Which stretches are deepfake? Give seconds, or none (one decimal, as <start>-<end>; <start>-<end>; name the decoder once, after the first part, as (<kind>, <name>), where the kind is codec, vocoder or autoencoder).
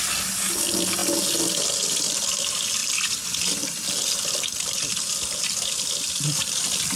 none